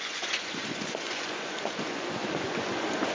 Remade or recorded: remade